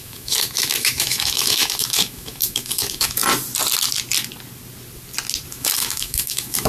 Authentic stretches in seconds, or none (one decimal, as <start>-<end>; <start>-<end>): 3.2-5.5